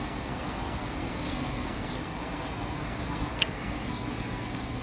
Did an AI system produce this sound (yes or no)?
yes